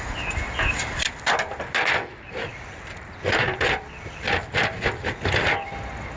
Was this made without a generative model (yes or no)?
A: yes